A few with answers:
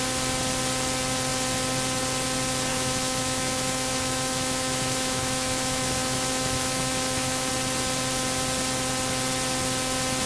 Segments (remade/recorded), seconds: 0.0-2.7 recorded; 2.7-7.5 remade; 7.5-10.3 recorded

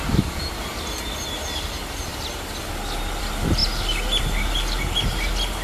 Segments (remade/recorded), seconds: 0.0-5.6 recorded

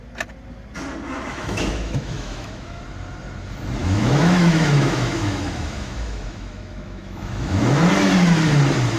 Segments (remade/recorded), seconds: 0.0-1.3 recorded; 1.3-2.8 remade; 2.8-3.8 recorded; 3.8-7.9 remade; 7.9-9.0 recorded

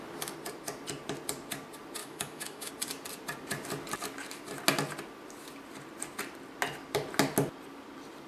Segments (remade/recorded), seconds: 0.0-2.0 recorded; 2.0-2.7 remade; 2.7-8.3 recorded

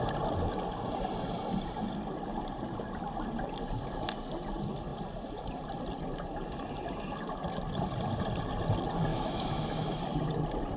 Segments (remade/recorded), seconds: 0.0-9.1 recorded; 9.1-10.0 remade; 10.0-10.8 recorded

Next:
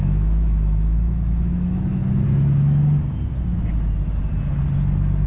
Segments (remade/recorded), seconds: 0.0-2.0 remade; 2.0-5.3 recorded

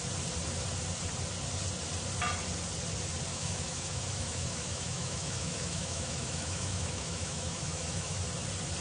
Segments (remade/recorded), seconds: 0.0-3.3 recorded; 3.3-8.2 remade; 8.2-8.8 recorded